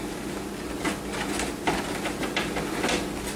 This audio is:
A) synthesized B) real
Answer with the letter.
B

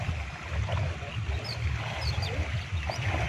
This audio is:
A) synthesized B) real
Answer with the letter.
B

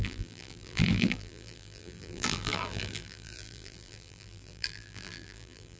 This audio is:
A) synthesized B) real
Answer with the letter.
A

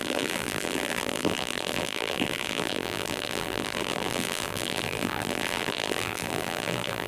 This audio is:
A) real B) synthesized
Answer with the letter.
B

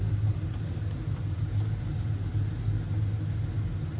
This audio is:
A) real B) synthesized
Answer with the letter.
A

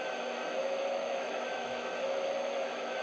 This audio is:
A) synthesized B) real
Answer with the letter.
A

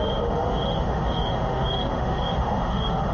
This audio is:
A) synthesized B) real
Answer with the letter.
A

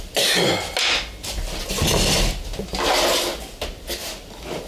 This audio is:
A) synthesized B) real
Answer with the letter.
B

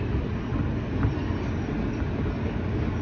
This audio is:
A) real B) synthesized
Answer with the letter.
A